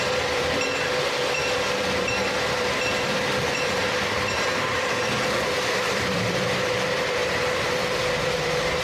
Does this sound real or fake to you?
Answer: fake